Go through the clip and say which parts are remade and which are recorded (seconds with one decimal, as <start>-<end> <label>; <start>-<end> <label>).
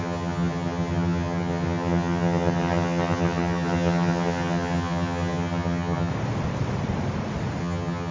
0.0-6.1 remade; 6.1-7.6 recorded; 7.6-8.1 remade